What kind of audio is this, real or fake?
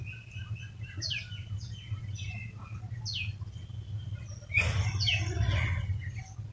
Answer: real